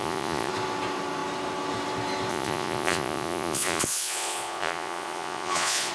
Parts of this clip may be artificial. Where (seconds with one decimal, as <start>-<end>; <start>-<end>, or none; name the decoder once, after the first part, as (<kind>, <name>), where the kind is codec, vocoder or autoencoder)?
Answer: 0.0-0.5 (vocoder, Vocos); 2.3-5.9